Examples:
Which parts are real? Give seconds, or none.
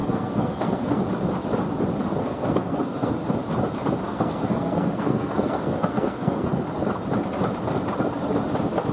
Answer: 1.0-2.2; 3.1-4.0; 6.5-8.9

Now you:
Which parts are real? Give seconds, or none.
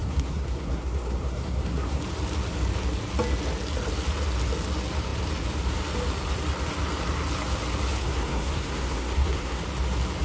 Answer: 2.0-8.0; 9.6-10.2